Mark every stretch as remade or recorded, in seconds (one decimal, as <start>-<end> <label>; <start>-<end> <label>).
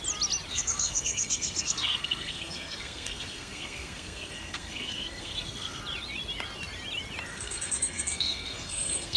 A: 0.0-0.5 recorded; 0.5-5.8 remade; 5.8-7.3 recorded; 7.3-9.2 remade